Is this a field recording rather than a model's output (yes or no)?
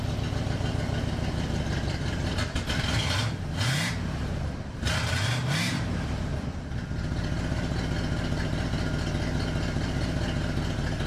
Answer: yes